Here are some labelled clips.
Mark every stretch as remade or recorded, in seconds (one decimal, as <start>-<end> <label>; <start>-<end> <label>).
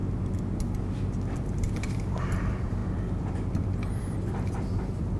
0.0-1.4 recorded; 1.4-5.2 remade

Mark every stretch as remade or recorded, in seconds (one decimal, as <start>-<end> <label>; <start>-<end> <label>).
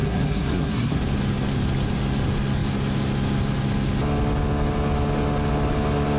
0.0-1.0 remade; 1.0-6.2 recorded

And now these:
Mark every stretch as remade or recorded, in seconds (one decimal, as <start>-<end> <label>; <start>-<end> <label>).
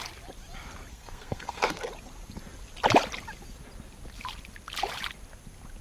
0.0-0.9 recorded; 0.9-1.9 remade; 1.9-5.8 recorded